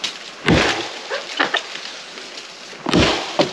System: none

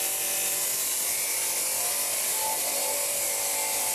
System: none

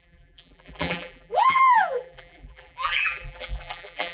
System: vocoder, BigVGAN v2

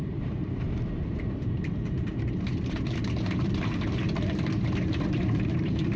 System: vocoder, BigVGAN v2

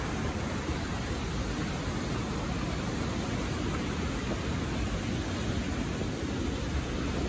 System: none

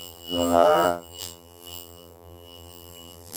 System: vocoder, BigVGAN v2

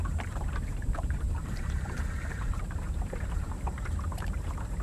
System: vocoder, BigVGAN v2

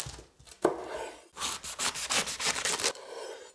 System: none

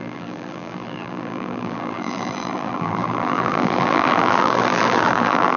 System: vocoder, BigVGAN v2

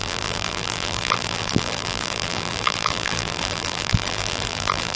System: vocoder, BigVGAN v2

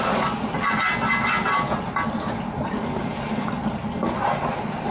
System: none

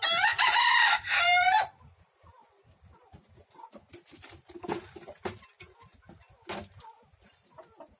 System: vocoder, BigVGAN v2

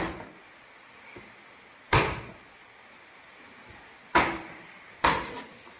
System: vocoder, BigVGAN v2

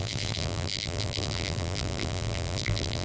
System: vocoder, BigVGAN v2